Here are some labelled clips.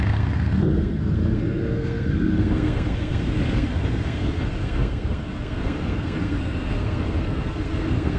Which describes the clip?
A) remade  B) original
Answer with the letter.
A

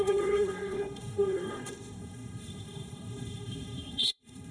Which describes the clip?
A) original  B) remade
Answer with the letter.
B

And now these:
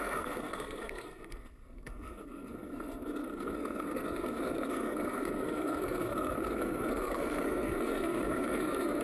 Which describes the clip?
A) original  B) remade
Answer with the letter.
B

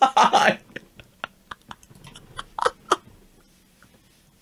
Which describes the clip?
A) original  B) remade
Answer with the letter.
A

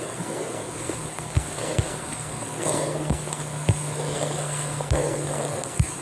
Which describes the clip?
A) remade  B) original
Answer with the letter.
A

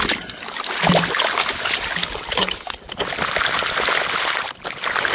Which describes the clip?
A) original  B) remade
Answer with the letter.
A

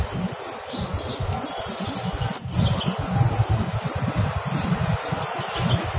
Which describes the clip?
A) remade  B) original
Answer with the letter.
B